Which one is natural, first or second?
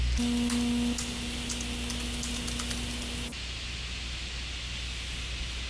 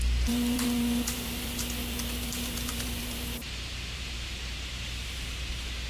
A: first